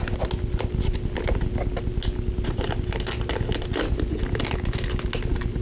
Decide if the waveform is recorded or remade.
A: recorded